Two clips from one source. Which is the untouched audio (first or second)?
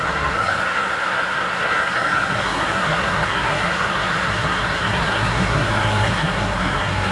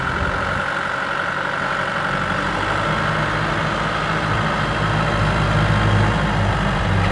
second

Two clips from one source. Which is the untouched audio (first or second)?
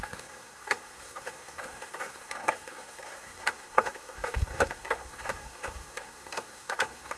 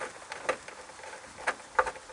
second